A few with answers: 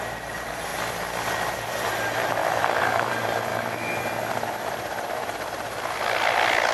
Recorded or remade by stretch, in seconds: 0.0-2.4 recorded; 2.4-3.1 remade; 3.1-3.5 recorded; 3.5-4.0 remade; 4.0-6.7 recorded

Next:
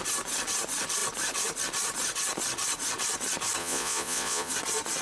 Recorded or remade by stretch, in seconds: 0.0-3.6 recorded; 3.6-4.5 remade; 4.5-5.0 recorded

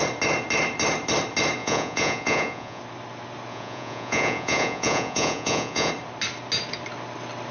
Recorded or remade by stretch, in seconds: 0.0-1.6 recorded; 1.6-2.8 remade; 2.8-3.5 recorded; 3.5-5.9 remade; 5.9-7.5 recorded